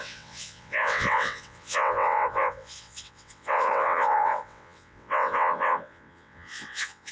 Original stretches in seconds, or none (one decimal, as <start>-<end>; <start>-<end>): none